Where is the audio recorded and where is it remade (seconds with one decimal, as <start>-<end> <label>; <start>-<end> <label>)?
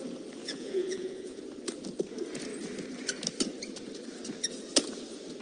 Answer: 0.0-0.4 recorded; 0.4-1.4 remade; 1.4-5.4 recorded